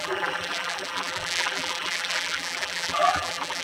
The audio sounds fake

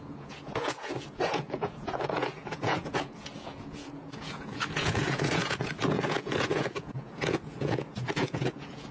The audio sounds fake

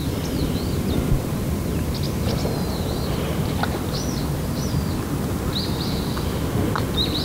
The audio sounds real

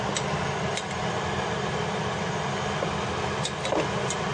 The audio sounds real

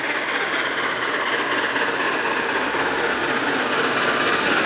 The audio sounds real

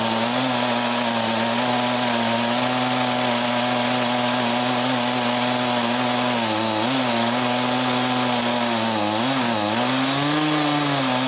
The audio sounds real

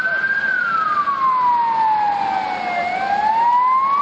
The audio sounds real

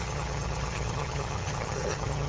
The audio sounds fake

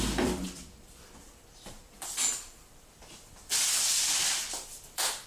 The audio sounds fake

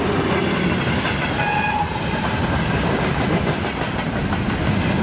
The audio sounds real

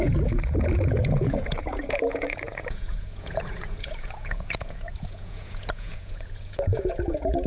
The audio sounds fake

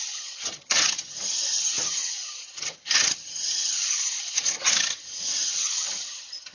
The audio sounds fake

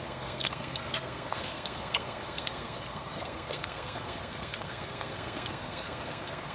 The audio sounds fake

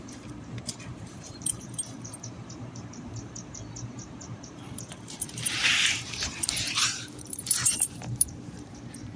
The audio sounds fake